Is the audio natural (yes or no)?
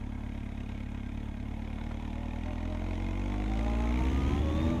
yes